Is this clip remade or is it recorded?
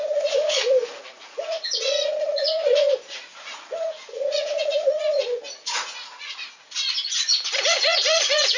remade